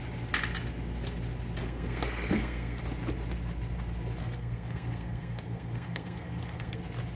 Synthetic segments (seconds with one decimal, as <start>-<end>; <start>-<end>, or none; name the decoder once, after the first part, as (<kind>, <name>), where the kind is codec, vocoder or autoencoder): 1.6-2.8 (codec, SNAC); 4.2-6.8